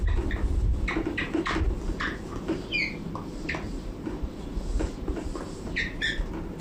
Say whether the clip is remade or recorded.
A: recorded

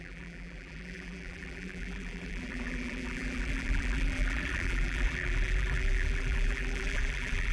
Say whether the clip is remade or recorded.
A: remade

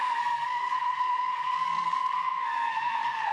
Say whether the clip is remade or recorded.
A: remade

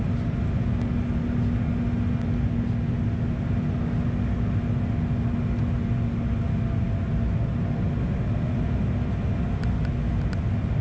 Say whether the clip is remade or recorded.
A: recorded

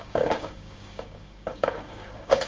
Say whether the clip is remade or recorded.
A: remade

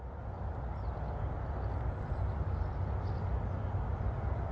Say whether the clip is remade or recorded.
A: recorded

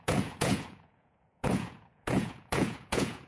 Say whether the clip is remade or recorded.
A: remade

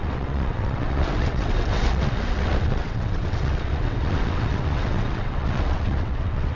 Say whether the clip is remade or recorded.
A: remade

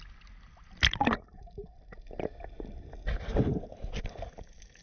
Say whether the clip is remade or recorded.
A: recorded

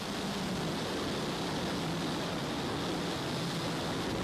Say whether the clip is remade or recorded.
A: recorded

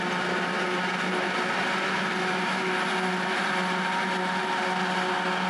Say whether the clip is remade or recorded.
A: recorded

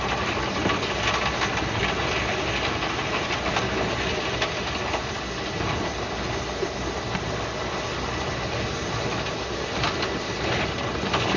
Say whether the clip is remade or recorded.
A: recorded